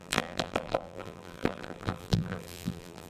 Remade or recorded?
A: remade